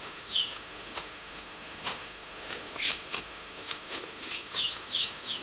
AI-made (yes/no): yes